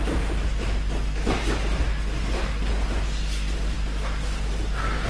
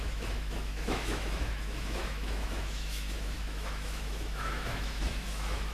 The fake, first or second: second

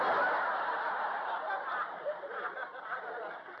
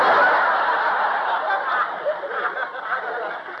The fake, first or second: first